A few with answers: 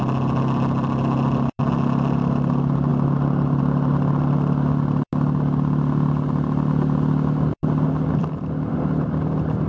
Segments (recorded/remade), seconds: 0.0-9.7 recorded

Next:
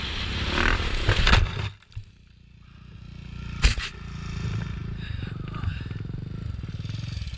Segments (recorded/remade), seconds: 0.0-4.8 remade; 4.8-7.4 recorded